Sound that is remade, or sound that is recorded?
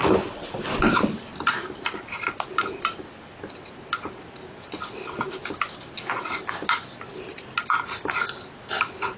recorded